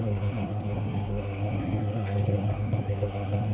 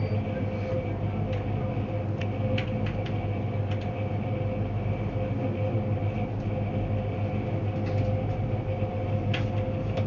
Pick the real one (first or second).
second